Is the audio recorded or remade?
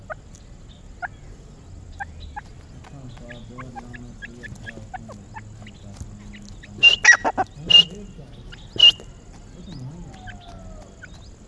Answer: recorded